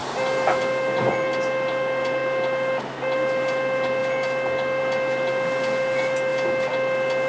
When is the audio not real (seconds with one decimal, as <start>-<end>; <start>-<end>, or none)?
none